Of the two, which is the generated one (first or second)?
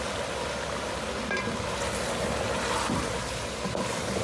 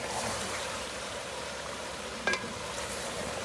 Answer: second